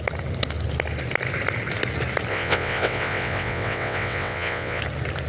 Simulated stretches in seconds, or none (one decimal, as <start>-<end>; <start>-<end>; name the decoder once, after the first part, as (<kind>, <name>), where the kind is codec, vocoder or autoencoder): 2.3-4.8 (vocoder, WaveNeXt)

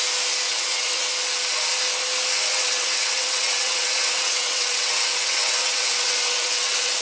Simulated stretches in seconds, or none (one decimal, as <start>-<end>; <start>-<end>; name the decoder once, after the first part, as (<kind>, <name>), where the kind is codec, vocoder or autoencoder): 0.5-1.1 (vocoder, WaveNeXt); 2.5-7.0